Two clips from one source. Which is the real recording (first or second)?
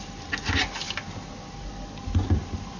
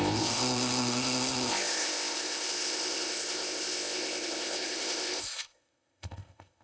first